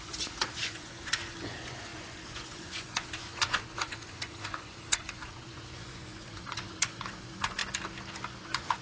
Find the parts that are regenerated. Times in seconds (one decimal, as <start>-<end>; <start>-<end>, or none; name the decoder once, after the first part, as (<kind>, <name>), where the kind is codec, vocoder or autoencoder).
0.0-7.6 (vocoder, Vocos); 8.4-8.8